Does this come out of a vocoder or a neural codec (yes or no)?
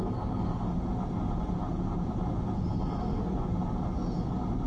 no